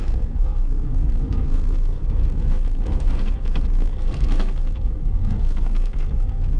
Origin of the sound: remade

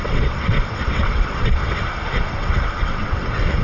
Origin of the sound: remade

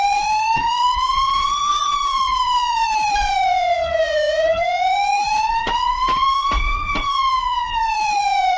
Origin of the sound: remade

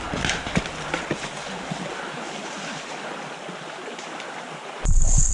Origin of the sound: recorded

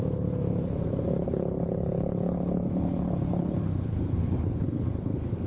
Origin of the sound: remade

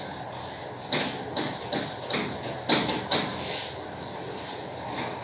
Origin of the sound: recorded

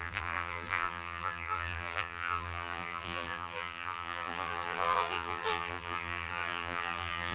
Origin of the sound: remade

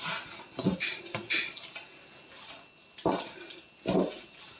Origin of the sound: recorded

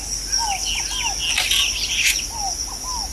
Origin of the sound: recorded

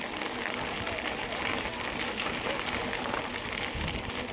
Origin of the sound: recorded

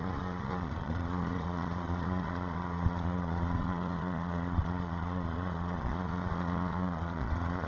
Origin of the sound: remade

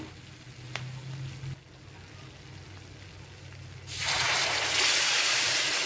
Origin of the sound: recorded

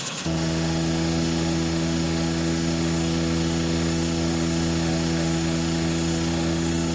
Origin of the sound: remade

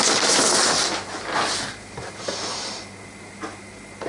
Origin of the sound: recorded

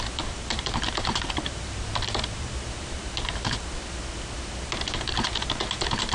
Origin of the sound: remade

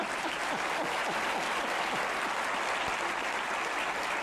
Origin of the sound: recorded